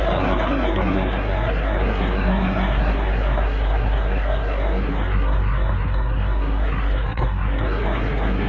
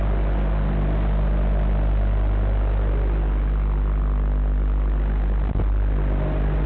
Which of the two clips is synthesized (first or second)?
first